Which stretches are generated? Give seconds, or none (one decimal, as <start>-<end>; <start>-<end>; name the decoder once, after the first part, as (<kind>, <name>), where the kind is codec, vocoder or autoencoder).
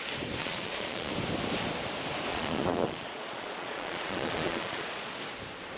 0.4-1.1 (vocoder, Vocos); 2.3-5.1